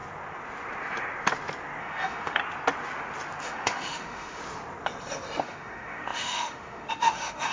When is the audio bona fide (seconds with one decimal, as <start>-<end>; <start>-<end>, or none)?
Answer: 0.0-1.8; 2.4-3.4; 4.4-5.4